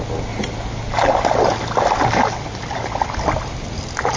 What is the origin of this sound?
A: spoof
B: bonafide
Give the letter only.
B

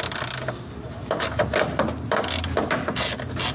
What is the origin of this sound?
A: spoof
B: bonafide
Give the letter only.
B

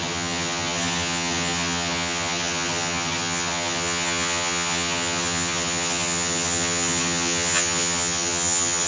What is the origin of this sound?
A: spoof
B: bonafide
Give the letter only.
A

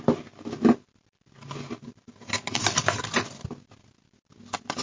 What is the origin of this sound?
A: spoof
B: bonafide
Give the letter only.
B